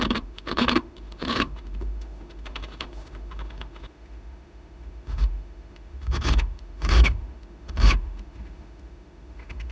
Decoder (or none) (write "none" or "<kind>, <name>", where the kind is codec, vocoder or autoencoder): autoencoder, DAC-VAE